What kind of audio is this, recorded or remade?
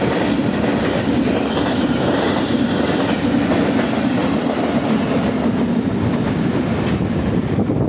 recorded